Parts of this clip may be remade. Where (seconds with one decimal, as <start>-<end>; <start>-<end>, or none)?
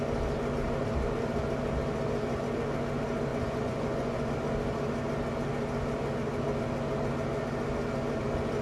3.3-4.3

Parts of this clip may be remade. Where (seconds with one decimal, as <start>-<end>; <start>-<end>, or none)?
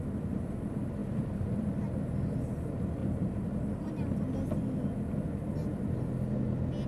1.0-1.8; 3.0-3.9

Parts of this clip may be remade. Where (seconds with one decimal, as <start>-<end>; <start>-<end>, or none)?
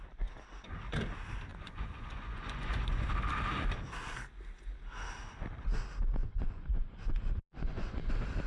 1.5-3.1; 6.2-8.1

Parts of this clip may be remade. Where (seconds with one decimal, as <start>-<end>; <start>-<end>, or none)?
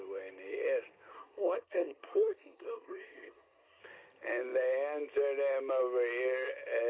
1.1-3.8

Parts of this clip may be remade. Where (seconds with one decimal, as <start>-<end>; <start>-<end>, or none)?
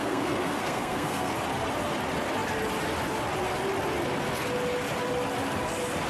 0.0-1.3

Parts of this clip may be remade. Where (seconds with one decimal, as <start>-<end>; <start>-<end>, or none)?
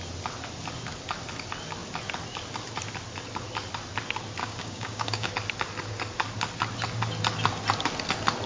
4.4-5.3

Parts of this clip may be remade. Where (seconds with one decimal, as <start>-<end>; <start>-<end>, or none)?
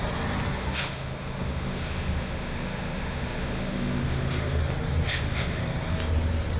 0.6-4.6; 5.1-5.6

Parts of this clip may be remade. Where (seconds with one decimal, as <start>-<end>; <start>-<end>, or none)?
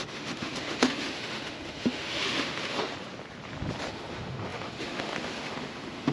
0.0-2.9; 3.9-6.1